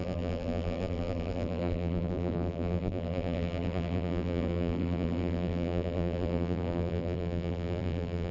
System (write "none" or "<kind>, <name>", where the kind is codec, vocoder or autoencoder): vocoder, BigVGAN v2